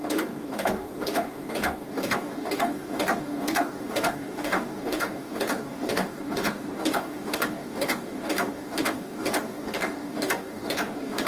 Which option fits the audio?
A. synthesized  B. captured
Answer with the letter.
A